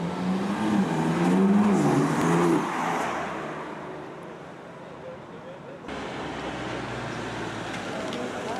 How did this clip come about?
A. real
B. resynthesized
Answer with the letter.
A